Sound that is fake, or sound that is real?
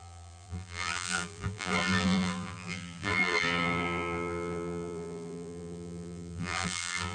fake